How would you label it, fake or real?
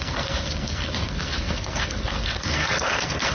fake